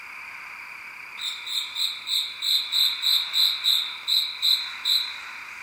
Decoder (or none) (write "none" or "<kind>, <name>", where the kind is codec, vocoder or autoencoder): none